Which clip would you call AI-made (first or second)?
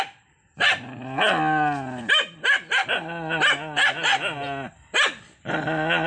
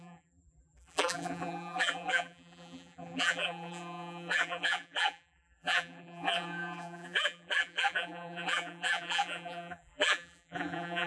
second